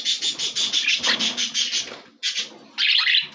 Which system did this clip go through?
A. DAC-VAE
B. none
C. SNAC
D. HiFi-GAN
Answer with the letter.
B